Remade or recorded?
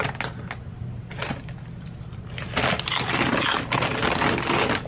recorded